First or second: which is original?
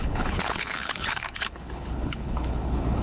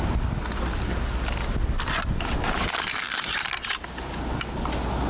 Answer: second